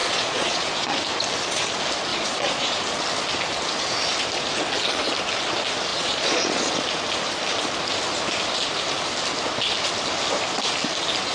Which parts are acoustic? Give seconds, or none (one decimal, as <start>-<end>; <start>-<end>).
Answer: 1.0-2.1; 2.8-5.9; 6.7-11.3